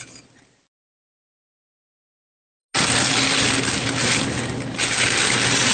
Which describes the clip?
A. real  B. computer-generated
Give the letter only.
A